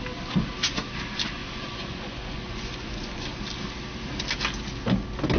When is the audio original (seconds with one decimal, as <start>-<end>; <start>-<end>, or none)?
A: 0.0-1.4; 3.4-5.4